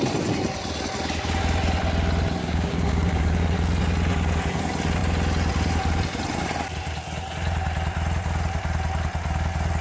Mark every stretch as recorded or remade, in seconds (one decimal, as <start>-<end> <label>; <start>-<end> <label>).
0.0-2.4 recorded; 2.4-3.2 remade; 3.2-9.8 recorded